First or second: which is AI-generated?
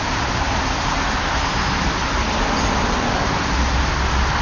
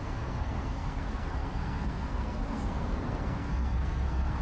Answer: second